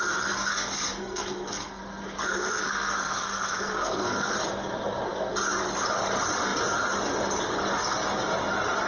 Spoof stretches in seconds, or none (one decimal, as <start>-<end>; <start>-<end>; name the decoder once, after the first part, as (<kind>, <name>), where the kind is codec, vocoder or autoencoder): 0.5-1.8 (codec, SNAC); 2.3-4.3